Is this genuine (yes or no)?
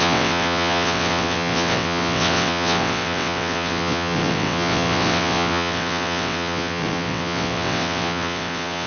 no